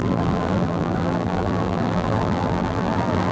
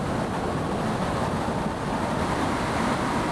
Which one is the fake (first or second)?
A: first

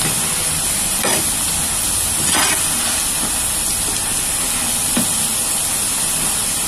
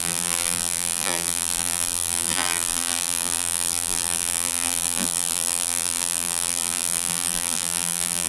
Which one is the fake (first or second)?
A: second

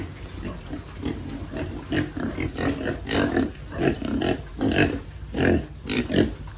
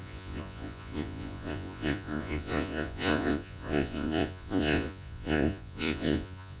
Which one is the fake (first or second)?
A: second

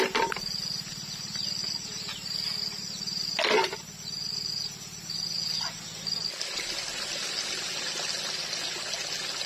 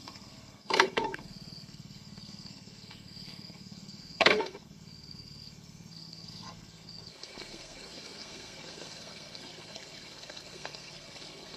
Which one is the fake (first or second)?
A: second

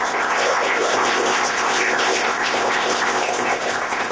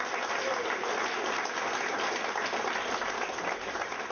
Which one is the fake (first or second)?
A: first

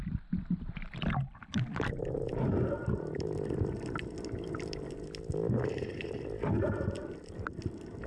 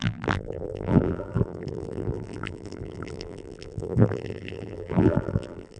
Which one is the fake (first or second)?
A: second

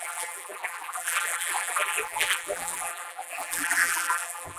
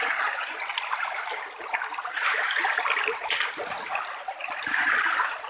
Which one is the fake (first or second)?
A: first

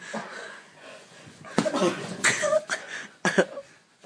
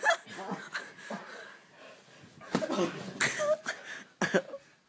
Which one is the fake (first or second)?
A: first